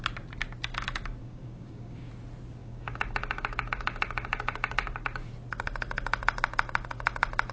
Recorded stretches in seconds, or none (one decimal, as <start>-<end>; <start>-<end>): 0.0-1.2; 2.1-2.6; 5.3-7.5